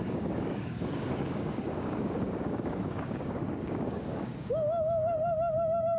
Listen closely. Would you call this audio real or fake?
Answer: fake